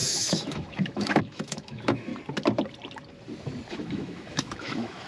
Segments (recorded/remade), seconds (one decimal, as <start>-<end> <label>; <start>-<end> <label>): 0.0-2.1 remade; 2.1-3.7 recorded; 3.7-5.1 remade